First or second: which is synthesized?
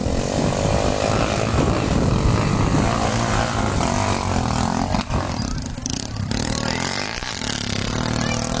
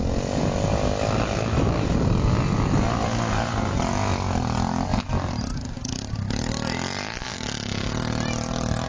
first